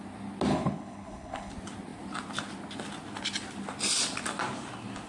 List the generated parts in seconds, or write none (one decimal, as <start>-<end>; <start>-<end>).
0.5-1.5